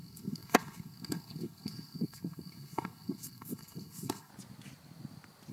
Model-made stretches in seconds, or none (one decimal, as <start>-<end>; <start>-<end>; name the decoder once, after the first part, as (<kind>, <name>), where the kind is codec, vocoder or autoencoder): 0.0-4.3 (codec, SNAC)

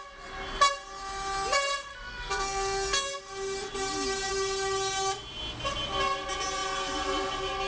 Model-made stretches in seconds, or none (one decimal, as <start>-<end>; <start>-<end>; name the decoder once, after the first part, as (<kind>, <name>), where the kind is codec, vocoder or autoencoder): 1.9-3.2 (codec, SNAC)

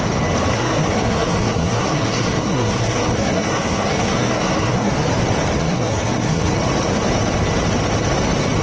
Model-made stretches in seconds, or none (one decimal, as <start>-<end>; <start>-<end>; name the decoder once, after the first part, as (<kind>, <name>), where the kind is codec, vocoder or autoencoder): 0.5-4.9 (codec, SNAC); 5.6-6.5

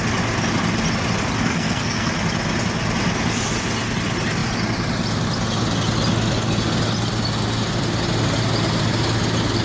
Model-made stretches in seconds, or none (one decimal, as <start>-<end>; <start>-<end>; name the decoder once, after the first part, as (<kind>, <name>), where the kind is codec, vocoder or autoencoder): 1.4-2.1 (codec, SNAC)